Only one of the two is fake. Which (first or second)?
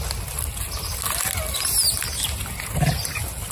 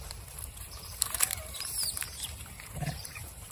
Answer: second